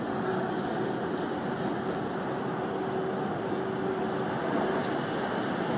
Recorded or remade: recorded